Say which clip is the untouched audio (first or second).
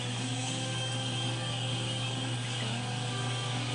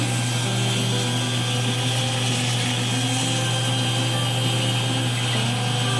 second